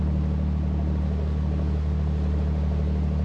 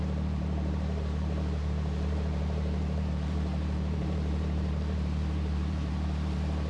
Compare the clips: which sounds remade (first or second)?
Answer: second